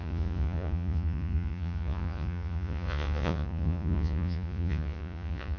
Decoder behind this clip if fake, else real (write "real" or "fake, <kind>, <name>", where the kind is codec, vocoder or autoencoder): fake, vocoder, Vocos